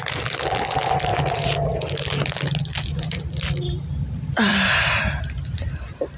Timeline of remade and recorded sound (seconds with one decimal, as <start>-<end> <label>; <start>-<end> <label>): 0.0-6.2 recorded